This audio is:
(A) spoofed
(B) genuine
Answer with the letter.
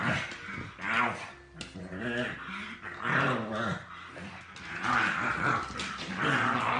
A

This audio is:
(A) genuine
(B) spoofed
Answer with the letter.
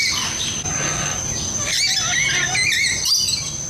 A